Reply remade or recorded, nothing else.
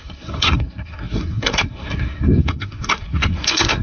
remade